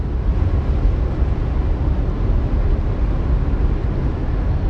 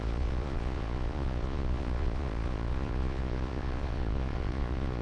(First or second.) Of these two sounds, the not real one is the second